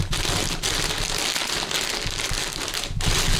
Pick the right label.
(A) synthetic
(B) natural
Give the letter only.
B